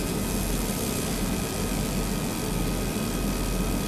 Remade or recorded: recorded